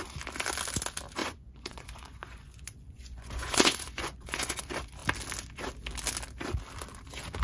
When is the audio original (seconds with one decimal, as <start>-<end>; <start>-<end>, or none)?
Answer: 0.0-1.2; 4.6-7.4